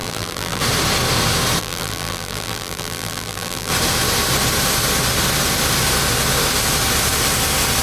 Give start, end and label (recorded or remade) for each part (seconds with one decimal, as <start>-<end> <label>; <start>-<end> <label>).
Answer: 0.0-0.6 remade; 0.6-1.6 recorded; 1.6-3.7 remade; 3.7-7.8 recorded